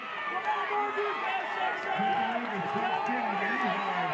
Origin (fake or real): real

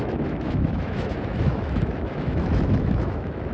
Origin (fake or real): fake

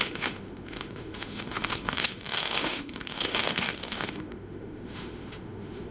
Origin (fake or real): fake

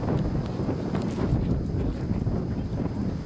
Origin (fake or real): real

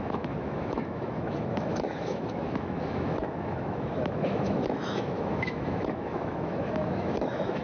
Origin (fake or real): fake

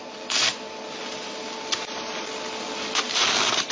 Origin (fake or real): real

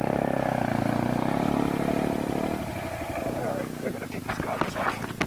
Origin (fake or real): real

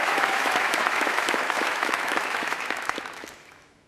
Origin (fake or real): fake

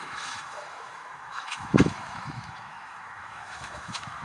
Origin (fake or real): fake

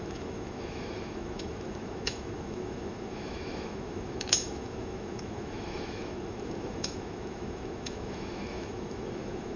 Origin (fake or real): fake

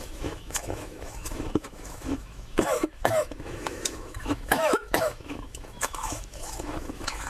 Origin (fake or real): fake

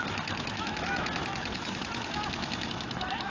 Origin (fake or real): fake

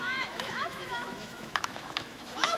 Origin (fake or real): fake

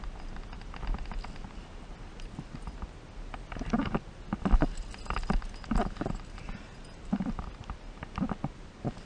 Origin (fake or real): real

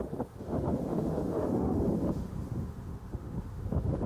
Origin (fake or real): fake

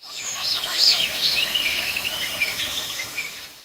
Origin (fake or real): fake